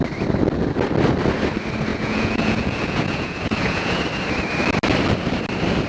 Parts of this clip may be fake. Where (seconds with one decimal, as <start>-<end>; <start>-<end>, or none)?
1.9-4.0